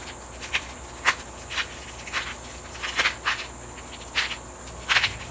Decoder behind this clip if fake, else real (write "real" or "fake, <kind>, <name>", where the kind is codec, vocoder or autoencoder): real